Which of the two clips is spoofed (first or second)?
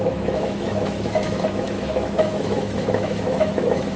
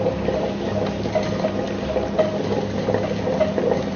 first